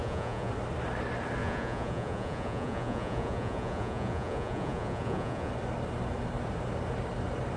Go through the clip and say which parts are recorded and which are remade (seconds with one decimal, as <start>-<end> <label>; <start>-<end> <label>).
0.0-0.5 remade; 0.5-1.4 recorded; 1.4-5.5 remade; 5.5-7.6 recorded